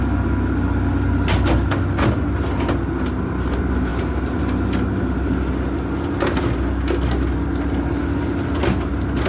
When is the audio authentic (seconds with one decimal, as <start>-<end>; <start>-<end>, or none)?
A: 0.0-9.3